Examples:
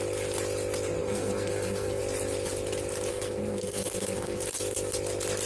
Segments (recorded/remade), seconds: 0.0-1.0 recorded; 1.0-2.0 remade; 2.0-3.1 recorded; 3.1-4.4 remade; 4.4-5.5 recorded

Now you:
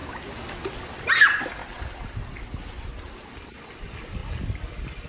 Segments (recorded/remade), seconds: 0.0-1.1 recorded; 1.1-1.6 remade; 1.6-3.4 recorded; 3.4-5.1 remade

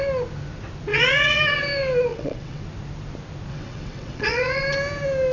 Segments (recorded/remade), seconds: 0.0-0.9 recorded; 0.9-1.4 remade; 1.4-2.1 recorded; 2.1-2.6 remade; 2.6-3.5 recorded; 3.5-4.6 remade; 4.6-5.3 recorded

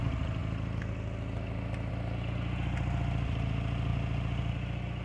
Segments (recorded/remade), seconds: 0.0-5.0 recorded

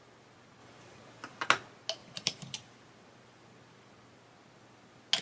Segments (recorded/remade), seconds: 0.0-0.6 recorded; 0.6-1.4 remade; 1.4-2.0 recorded; 2.0-3.9 remade; 3.9-5.2 recorded

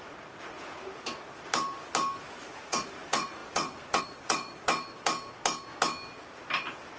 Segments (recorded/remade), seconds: 0.0-0.7 remade; 0.7-2.2 recorded; 2.2-4.7 remade; 4.7-7.0 recorded

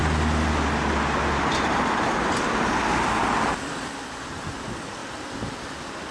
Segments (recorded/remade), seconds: 0.0-6.1 recorded

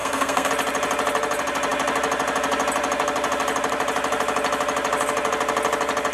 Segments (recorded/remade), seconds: 0.0-0.5 remade; 0.5-6.1 recorded